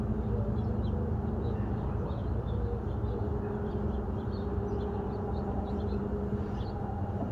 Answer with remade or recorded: recorded